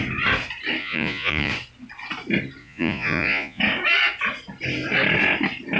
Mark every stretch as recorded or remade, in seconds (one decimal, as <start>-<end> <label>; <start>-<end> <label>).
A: 0.0-0.8 recorded; 0.8-1.5 remade; 1.5-2.6 recorded; 2.6-3.6 remade; 3.6-5.8 recorded